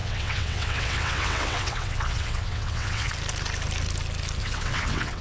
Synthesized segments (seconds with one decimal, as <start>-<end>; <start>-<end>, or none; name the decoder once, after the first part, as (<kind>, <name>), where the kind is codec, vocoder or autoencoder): 0.0-3.1 (vocoder, WaveNeXt); 4.4-5.2